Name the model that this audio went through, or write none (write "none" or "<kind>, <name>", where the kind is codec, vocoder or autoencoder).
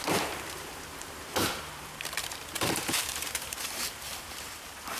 vocoder, BigVGAN v2